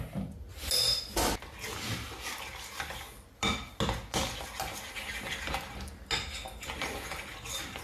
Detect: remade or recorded recorded